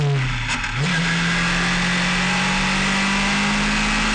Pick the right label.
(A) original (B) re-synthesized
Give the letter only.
A